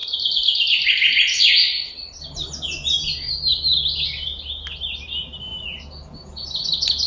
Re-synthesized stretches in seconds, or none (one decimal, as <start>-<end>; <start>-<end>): none